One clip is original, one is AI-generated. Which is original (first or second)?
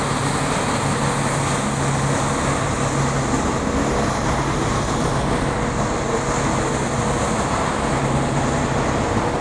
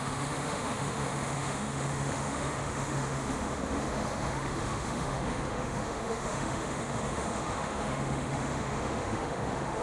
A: first